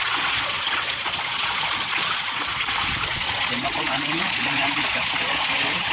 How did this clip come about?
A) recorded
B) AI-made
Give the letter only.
B